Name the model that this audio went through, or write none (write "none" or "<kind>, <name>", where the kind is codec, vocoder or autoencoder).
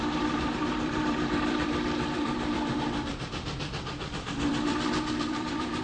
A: vocoder, BigVGAN v2